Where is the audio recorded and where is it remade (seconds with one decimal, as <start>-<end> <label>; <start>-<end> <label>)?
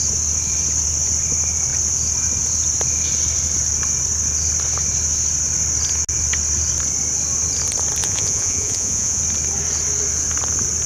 0.0-8.0 recorded; 8.0-9.2 remade; 9.2-10.9 recorded